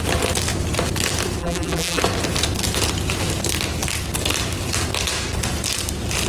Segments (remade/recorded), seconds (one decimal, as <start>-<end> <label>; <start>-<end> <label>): 0.0-1.4 recorded; 1.4-2.0 remade; 2.0-6.3 recorded